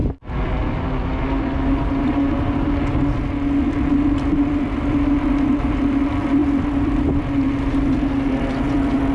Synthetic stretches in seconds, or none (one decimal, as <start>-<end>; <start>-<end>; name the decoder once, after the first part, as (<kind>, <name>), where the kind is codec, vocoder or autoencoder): 3.7-9.1 (vocoder, BigVGAN v2)